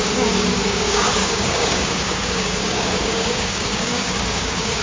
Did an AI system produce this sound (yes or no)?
yes